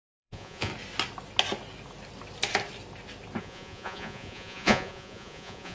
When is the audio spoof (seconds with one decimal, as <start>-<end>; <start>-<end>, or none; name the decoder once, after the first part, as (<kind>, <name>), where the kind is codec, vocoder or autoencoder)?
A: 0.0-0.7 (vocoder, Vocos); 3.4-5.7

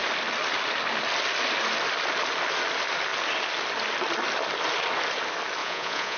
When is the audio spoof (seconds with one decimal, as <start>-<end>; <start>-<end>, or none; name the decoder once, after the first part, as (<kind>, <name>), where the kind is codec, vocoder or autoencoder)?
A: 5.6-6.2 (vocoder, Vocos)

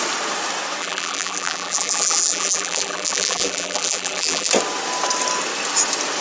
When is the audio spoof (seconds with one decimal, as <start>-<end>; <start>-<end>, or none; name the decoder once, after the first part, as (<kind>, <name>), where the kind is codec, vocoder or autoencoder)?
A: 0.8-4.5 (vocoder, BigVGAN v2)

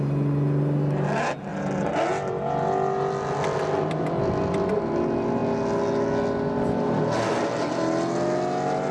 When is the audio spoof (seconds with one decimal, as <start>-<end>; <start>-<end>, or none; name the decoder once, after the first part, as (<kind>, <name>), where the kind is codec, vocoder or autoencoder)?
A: none

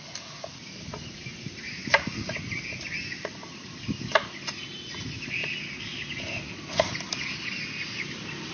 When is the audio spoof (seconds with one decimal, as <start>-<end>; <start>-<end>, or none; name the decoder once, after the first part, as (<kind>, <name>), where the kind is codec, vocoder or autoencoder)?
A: none

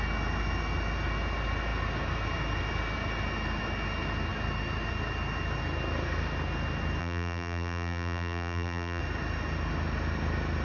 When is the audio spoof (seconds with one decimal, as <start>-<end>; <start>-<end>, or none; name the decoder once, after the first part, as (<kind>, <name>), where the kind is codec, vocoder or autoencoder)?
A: 7.0-9.0 (vocoder, BigVGAN v2)

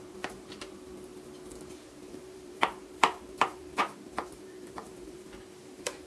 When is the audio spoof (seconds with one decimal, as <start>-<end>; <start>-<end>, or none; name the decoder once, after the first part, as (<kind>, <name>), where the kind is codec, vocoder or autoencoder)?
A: 0.0-1.1 (vocoder, BigVGAN v2); 2.1-6.1